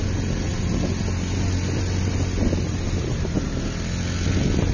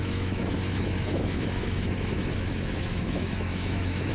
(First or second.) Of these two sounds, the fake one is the second